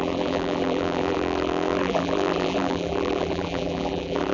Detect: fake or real fake